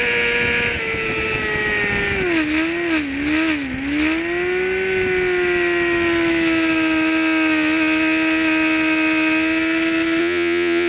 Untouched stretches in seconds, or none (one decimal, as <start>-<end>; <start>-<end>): 0.0-10.2